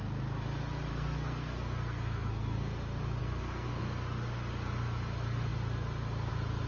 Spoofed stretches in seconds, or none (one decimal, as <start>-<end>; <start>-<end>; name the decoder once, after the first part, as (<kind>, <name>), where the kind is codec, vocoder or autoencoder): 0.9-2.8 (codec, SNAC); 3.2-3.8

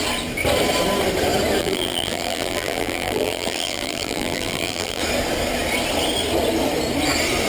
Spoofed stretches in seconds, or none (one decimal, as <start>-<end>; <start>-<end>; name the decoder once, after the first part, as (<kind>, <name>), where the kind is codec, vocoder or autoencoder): 1.6-5.0 (vocoder, BigVGAN v2)

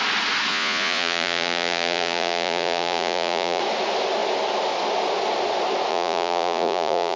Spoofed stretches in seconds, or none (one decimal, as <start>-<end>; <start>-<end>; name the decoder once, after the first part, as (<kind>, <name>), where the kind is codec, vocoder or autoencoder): 0.5-3.6 (vocoder, Vocos); 5.9-7.2

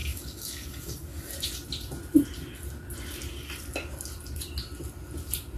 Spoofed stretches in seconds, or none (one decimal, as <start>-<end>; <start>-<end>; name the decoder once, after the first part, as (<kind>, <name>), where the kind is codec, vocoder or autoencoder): 0.0-1.3 (codec, DAC)

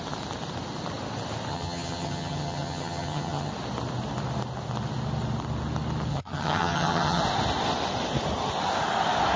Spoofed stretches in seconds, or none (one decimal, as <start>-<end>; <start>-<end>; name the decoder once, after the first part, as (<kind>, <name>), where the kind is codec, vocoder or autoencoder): 1.5-3.5 (vocoder, HiFi-GAN); 6.1-7.2

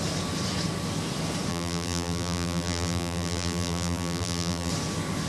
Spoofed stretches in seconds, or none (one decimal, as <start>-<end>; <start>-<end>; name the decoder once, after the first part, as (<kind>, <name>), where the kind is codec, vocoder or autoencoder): 1.5-4.7 (vocoder, BigVGAN v2)

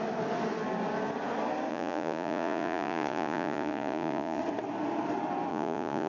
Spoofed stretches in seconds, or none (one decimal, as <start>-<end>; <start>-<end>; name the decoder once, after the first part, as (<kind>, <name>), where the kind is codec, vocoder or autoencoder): 1.7-4.4 (vocoder, Vocos); 5.5-6.1